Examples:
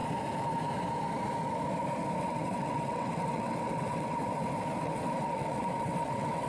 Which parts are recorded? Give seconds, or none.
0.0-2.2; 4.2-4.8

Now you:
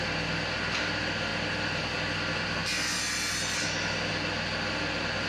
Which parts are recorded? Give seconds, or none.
0.0-5.3

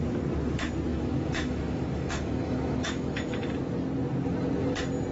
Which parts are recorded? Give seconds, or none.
0.0-0.9; 3.6-5.1

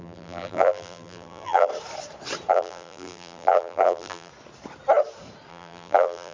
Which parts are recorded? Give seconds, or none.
1.7-2.5; 4.3-5.5